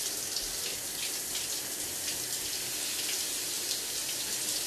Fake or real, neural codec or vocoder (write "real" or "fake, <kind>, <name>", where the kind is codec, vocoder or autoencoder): real